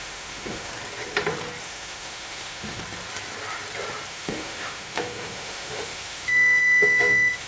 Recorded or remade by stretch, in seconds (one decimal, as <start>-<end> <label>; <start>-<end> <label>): 0.0-0.7 remade; 0.7-1.6 recorded; 1.6-2.8 remade; 2.8-4.1 recorded; 4.1-7.5 remade